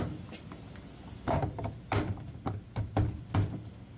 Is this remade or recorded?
recorded